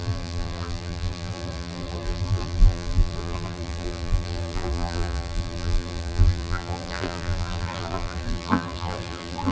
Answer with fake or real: fake